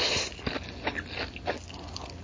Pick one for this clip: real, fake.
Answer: real